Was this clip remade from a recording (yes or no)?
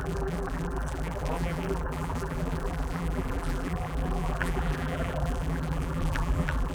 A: yes